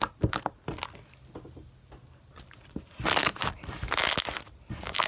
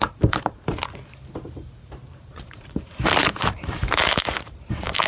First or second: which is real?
first